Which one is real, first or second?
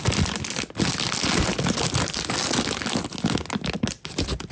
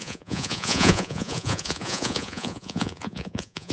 first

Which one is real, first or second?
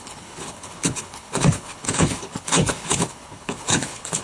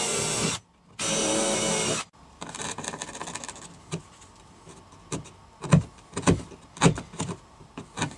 second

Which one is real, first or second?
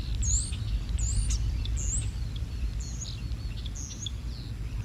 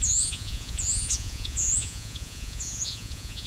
first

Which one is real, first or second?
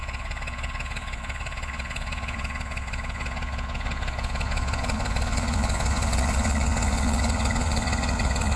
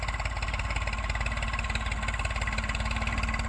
second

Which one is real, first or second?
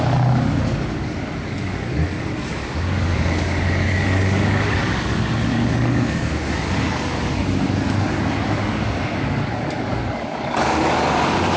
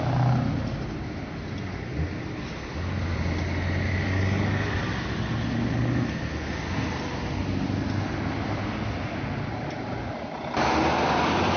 second